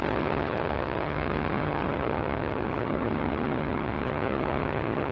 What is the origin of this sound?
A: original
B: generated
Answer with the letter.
B